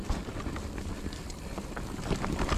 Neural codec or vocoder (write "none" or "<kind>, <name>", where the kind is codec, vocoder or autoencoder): none